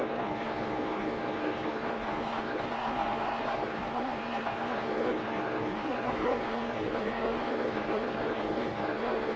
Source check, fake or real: fake